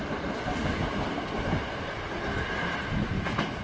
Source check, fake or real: fake